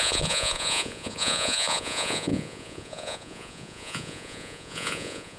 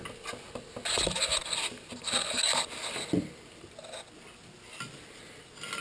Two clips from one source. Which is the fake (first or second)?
first